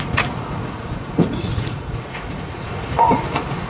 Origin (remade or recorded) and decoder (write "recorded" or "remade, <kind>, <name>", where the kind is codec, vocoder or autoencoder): remade, vocoder, Vocos